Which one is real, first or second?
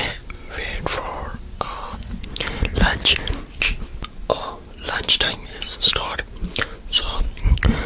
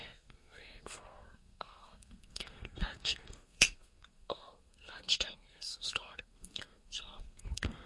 first